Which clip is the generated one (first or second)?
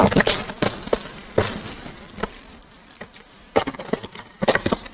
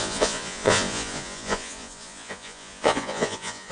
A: second